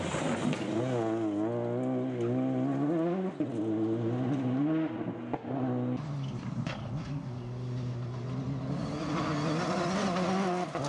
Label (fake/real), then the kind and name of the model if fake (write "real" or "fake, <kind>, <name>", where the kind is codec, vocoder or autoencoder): real